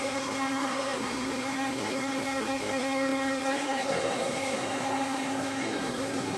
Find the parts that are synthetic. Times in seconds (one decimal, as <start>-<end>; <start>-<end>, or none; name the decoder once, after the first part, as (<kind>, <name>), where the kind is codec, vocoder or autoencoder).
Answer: 0.0-6.4 (codec, SNAC)